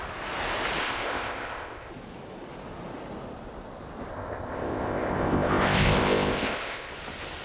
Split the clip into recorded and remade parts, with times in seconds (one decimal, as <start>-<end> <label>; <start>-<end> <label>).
0.0-0.8 recorded; 0.8-1.9 remade; 1.9-4.1 recorded; 4.1-6.9 remade; 6.9-7.4 recorded